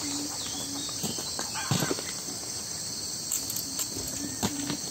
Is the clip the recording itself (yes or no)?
yes